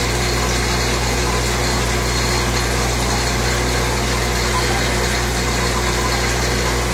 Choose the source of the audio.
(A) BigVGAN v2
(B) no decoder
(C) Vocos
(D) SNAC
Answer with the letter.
B